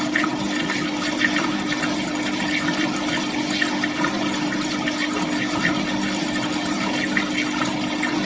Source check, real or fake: real